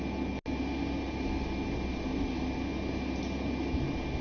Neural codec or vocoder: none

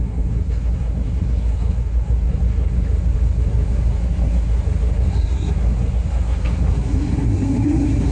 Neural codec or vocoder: codec, SNAC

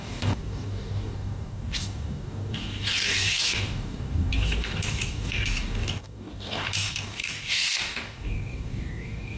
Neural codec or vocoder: codec, DAC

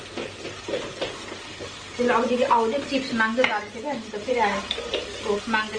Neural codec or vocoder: none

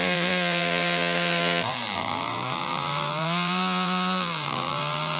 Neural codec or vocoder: vocoder, BigVGAN v2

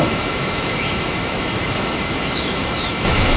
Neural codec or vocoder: autoencoder, DAC-VAE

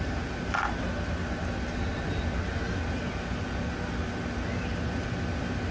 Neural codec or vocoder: none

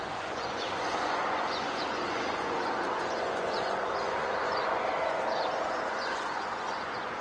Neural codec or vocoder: vocoder, Vocos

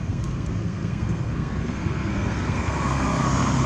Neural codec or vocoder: codec, SNAC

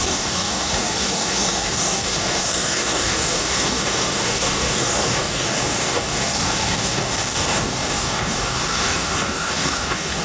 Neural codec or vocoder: codec, DAC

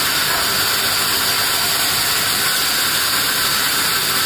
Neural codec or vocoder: none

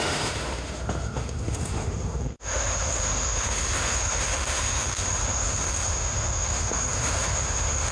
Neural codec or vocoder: autoencoder, DAC-VAE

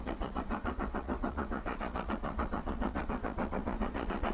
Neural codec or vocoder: vocoder, Vocos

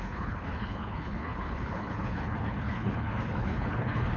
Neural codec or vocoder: codec, HILCodec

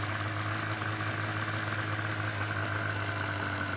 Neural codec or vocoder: none